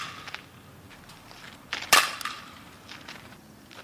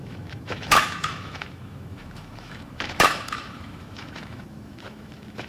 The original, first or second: first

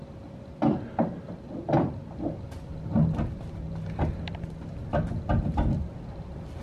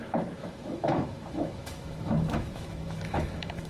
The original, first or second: first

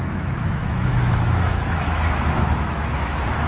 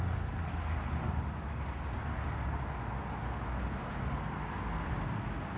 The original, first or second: second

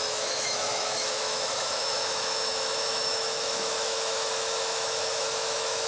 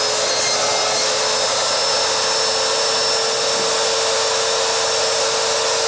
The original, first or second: second